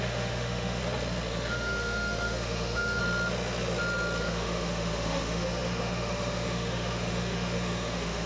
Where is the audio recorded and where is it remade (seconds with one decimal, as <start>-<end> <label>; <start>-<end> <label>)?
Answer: 0.0-0.8 remade; 0.8-1.3 recorded; 1.3-3.0 remade; 3.0-4.2 recorded; 4.2-8.3 remade